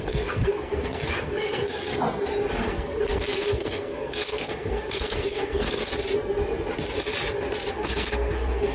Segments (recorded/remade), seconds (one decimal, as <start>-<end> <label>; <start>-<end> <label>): 0.0-1.9 remade; 1.9-2.6 recorded; 2.6-5.9 remade; 5.9-7.7 recorded; 7.7-8.7 remade